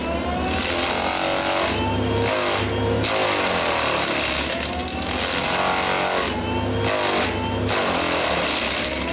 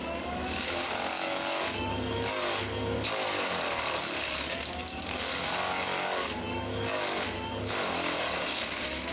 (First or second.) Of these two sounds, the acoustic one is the first